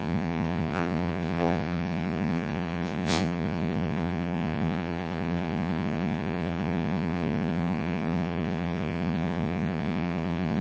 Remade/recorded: remade